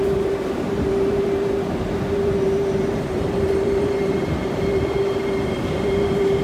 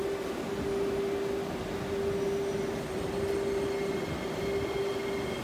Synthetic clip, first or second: first